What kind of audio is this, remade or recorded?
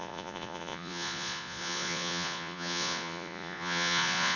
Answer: remade